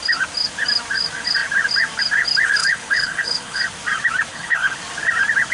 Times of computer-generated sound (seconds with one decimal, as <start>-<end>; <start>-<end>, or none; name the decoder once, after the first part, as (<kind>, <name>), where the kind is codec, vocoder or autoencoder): 2.6-3.6 (codec, HILCodec); 4.3-4.8